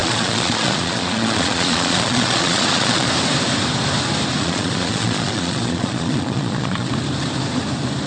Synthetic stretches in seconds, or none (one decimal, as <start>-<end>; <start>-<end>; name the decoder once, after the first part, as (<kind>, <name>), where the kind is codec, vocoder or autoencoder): 0.0-3.1 (vocoder, Vocos); 4.4-6.9